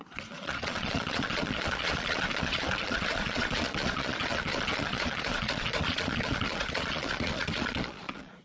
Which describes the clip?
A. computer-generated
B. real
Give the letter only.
A